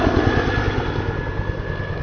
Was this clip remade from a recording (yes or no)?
no